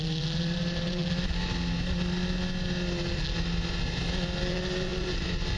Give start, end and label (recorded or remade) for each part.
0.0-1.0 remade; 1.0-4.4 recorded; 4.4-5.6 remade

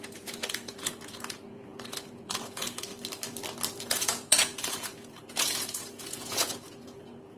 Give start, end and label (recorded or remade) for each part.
0.0-2.9 remade; 2.9-3.9 recorded; 3.9-7.4 remade

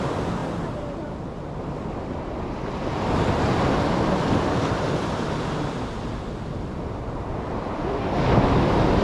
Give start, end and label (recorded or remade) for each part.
0.0-9.0 recorded

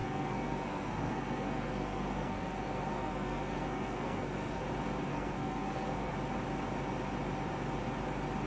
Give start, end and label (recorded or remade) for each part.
0.0-4.6 remade; 4.6-5.1 recorded; 5.1-6.1 remade; 6.1-8.5 recorded

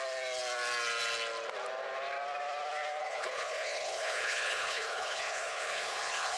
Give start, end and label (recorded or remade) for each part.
0.0-3.0 recorded; 3.0-6.4 remade

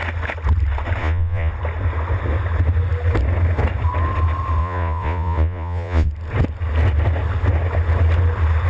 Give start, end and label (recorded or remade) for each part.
0.0-1.0 recorded; 1.0-1.5 remade; 1.5-4.6 recorded; 4.6-6.1 remade; 6.1-8.7 recorded

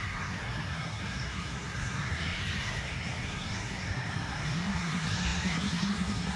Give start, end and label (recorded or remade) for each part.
0.0-6.4 remade

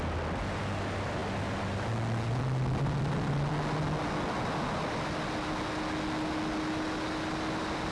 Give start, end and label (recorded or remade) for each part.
0.0-7.9 recorded